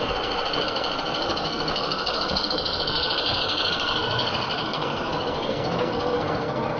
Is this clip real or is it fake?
fake